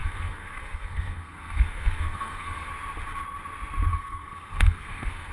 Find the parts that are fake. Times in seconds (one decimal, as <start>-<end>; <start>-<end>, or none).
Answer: 0.0-2.7; 3.9-5.3